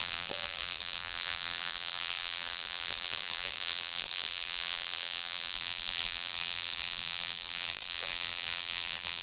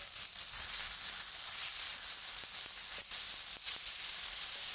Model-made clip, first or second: first